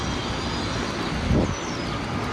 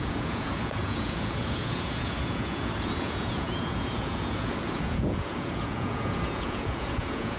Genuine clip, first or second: first